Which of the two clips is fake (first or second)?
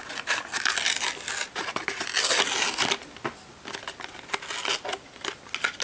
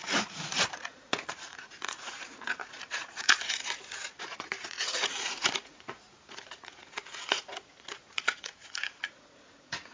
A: second